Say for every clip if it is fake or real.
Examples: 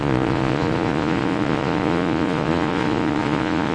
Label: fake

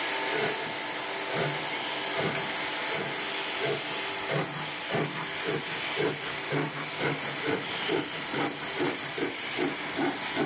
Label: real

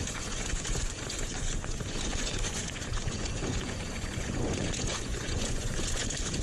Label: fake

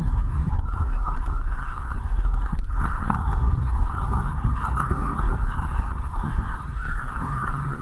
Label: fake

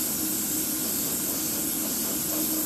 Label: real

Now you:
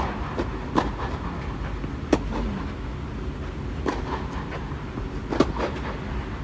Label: real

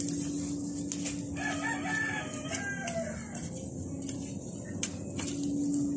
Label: real